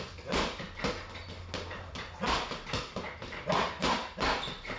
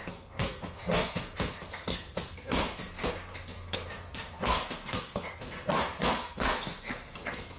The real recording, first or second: first